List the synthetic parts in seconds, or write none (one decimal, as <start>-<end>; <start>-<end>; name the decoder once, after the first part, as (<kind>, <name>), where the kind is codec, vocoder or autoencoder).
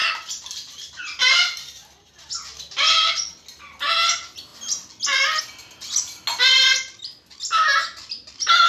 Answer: 0.0-2.3 (vocoder, BigVGAN v2)